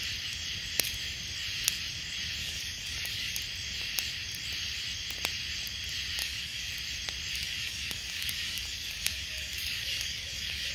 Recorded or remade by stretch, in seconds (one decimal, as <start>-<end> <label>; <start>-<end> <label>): 0.0-2.4 recorded; 2.4-3.4 remade; 3.4-6.2 recorded; 6.2-6.7 remade; 6.7-7.3 recorded; 7.3-10.7 remade